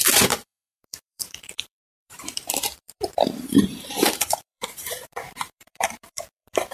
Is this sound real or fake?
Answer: fake